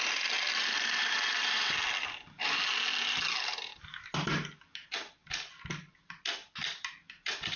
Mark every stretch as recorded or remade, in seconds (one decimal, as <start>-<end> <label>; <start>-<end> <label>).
0.0-7.6 recorded